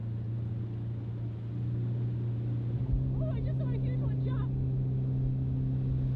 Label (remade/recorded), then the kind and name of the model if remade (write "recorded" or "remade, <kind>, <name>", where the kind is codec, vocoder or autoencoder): recorded